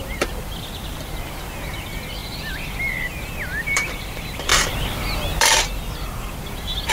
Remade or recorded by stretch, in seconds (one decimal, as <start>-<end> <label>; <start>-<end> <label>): 0.0-4.5 remade; 4.5-5.4 recorded; 5.4-6.9 remade

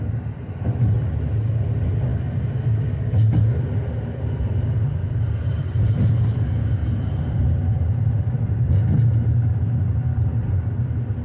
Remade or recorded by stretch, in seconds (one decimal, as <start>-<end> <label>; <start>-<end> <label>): 0.0-6.8 recorded; 6.8-8.7 remade; 8.7-11.2 recorded

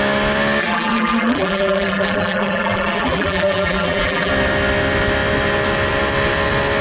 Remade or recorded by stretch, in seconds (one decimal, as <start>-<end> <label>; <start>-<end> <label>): 0.0-0.6 recorded; 0.6-4.3 remade; 4.3-6.8 recorded

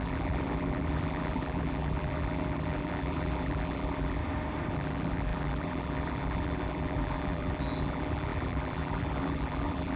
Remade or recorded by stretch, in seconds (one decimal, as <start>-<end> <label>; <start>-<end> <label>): 0.0-4.2 remade; 4.2-4.7 recorded; 4.7-10.0 remade

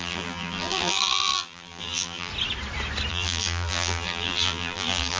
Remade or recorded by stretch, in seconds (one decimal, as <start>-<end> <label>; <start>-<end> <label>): 0.0-2.3 remade; 2.3-3.1 recorded; 3.1-5.2 remade